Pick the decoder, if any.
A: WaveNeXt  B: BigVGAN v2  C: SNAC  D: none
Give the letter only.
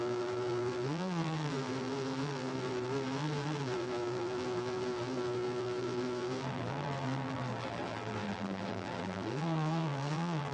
B